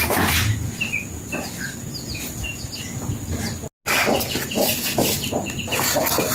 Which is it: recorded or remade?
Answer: recorded